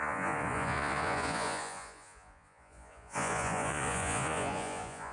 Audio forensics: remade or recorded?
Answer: remade